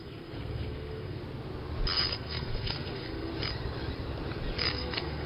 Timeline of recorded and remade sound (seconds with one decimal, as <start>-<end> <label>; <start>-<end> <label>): 0.0-1.2 remade; 1.2-2.1 recorded; 2.1-3.3 remade; 3.3-4.7 recorded; 4.7-5.3 remade